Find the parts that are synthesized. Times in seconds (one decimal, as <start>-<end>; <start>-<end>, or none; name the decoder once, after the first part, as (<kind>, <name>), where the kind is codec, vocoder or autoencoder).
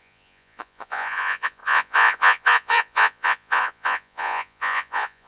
0.0-5.3 (vocoder, Vocos)